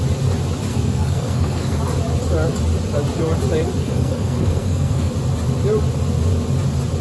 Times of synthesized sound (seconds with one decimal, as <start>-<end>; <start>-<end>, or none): 0.7-1.8; 3.8-5.1